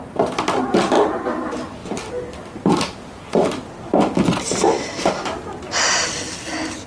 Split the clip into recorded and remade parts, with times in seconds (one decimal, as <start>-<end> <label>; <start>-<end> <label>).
0.0-6.9 recorded